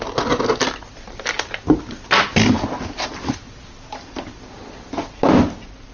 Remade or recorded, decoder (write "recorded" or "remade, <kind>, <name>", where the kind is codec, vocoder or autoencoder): recorded